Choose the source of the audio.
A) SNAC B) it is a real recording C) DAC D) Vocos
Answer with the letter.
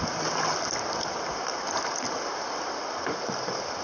B